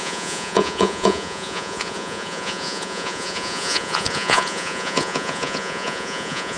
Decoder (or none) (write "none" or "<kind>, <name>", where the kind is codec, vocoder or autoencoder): vocoder, Vocos